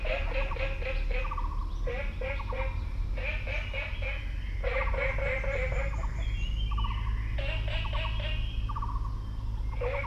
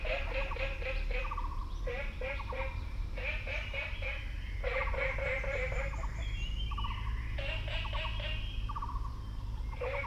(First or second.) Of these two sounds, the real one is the first